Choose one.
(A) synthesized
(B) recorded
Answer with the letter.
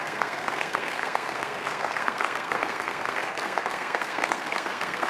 A